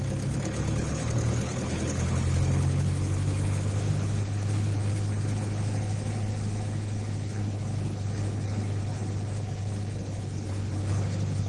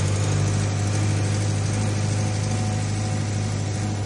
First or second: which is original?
second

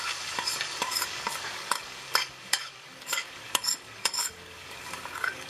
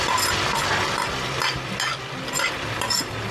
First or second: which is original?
second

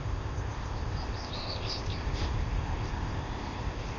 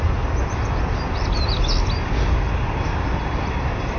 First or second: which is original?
second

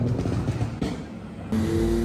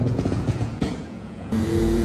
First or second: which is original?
first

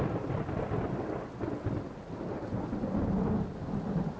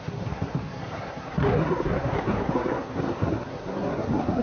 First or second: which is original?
first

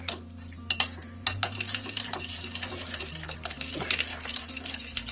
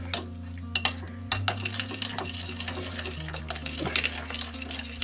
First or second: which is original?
second